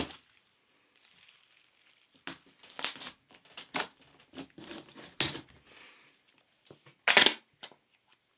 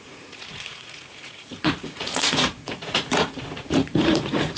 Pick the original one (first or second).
first